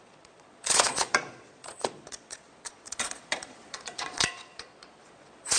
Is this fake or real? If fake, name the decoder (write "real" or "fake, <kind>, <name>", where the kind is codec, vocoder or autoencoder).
fake, vocoder, Vocos